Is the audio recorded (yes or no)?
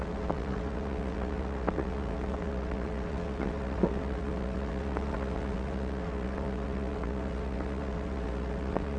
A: no